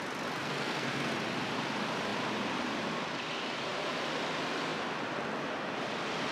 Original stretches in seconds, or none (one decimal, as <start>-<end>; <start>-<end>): 0.0-0.4; 1.1-6.3